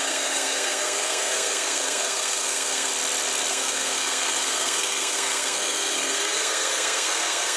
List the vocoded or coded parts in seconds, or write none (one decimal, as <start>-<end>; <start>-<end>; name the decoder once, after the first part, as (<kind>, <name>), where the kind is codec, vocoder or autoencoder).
0.0-2.9 (codec, SNAC); 3.5-7.6